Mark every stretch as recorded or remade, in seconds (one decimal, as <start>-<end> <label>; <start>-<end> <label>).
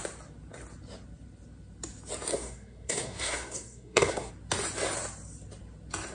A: 0.0-2.3 recorded; 2.3-4.3 remade; 4.3-6.1 recorded